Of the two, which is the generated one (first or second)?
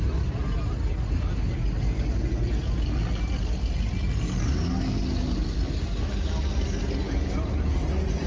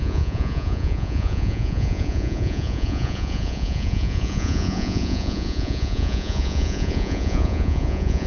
second